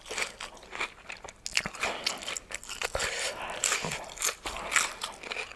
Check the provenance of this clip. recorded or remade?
recorded